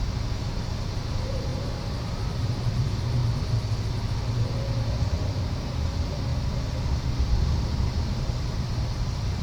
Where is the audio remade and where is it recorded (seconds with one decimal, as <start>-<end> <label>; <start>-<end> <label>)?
0.0-3.2 remade; 3.2-4.3 recorded; 4.3-9.4 remade